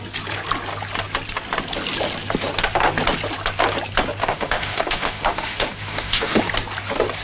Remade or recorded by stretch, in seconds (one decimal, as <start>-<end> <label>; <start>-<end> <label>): 0.0-4.2 recorded; 4.2-6.4 remade; 6.4-7.2 recorded